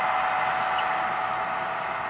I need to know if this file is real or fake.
real